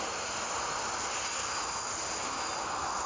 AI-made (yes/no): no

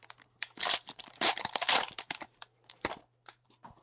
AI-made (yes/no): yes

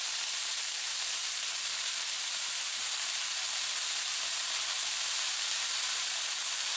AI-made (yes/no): yes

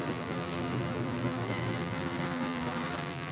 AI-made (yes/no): yes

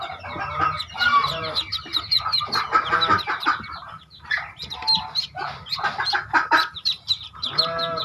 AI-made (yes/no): yes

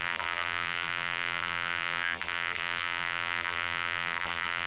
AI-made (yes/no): yes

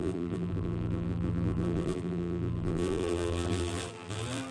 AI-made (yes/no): yes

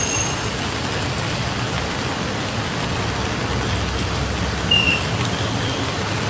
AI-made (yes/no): no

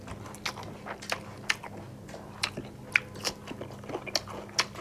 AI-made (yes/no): no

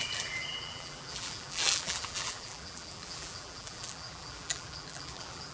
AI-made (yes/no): yes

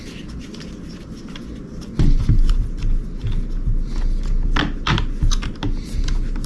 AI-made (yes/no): no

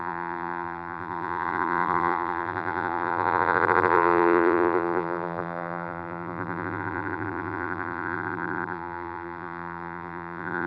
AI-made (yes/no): yes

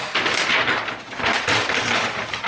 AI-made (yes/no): no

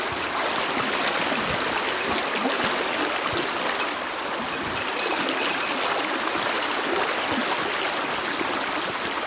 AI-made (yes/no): no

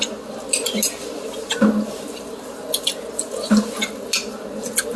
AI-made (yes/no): no